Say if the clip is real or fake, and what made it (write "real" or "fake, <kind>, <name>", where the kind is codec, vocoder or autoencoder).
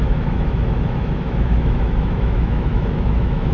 fake, autoencoder, DAC-VAE